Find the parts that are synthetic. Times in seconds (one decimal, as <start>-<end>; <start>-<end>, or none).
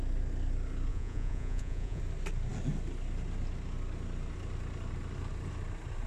0.9-2.0